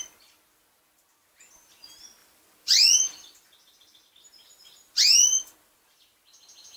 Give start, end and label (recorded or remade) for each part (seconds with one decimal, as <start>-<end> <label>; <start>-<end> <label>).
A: 0.0-2.2 recorded; 2.2-4.0 remade; 4.0-6.8 recorded